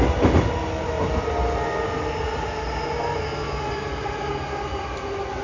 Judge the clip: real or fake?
real